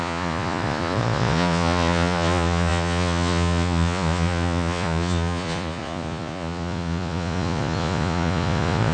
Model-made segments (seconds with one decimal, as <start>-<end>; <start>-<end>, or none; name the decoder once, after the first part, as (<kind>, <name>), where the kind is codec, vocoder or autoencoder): 0.0-8.9 (vocoder, Vocos)